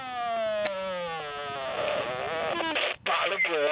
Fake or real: real